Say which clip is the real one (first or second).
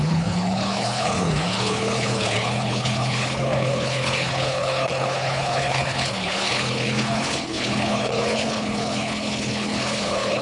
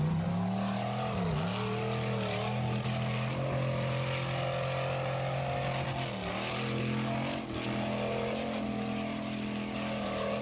second